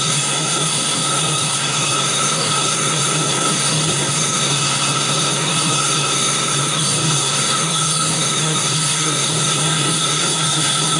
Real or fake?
fake